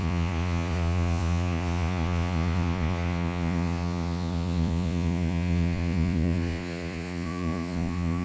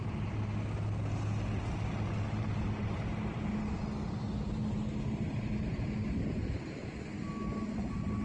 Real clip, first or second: second